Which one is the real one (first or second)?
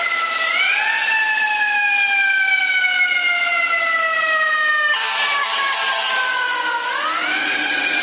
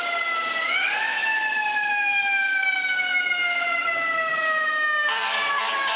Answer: first